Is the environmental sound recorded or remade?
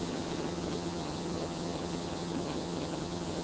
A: remade